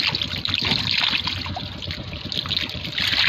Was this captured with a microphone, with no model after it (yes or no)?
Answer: yes